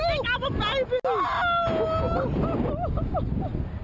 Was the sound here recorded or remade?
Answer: recorded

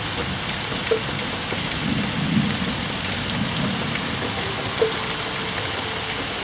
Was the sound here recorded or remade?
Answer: recorded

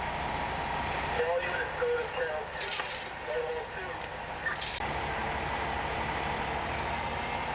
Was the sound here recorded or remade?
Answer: recorded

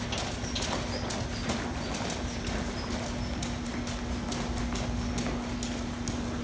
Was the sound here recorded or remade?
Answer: recorded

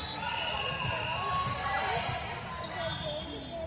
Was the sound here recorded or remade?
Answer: recorded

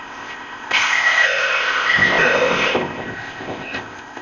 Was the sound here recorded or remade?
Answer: remade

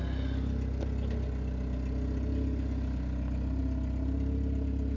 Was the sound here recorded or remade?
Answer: recorded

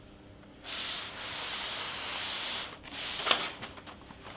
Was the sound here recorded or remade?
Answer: recorded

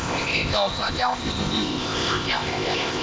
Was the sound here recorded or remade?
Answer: remade